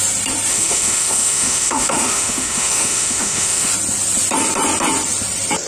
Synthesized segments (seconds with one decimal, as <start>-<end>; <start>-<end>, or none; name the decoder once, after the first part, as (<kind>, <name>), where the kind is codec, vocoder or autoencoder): 0.5-3.7 (autoencoder, DAC-VAE)